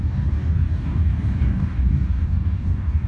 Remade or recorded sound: remade